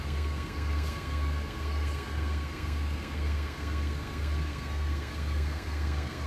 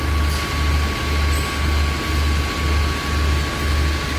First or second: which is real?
second